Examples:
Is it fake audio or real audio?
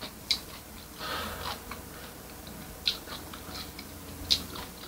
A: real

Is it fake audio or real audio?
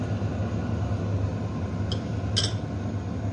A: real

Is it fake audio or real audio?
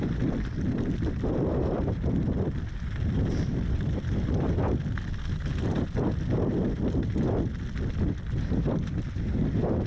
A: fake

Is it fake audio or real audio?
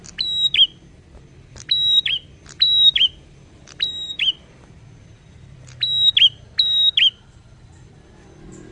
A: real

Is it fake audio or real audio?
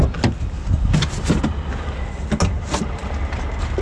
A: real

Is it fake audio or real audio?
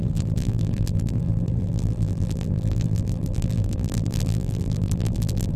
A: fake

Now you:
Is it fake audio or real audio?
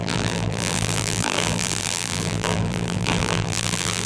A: fake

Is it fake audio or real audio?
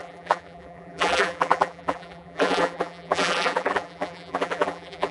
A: fake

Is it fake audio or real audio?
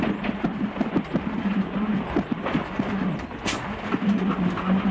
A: real